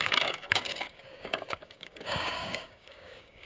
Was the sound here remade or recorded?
remade